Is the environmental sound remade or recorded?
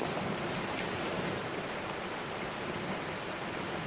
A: remade